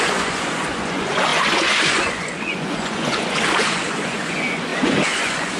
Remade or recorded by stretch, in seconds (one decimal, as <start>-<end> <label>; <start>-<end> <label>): 0.0-5.6 remade